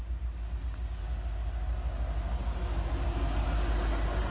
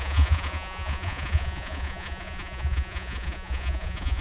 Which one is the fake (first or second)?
second